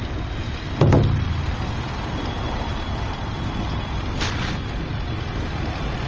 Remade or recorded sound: recorded